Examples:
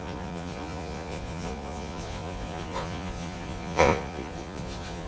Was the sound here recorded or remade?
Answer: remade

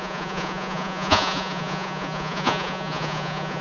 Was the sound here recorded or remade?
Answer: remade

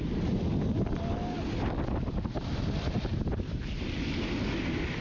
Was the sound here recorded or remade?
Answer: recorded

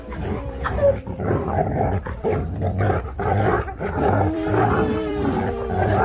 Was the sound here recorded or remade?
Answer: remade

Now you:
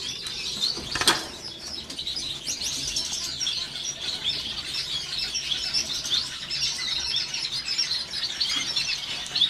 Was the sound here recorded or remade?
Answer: recorded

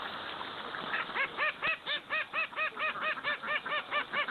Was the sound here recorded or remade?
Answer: recorded